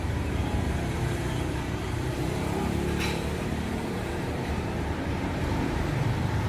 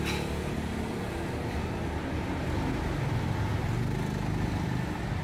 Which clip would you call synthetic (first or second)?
first